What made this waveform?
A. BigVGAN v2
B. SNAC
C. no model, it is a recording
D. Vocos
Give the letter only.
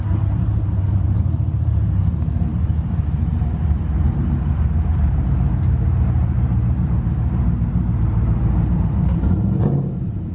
A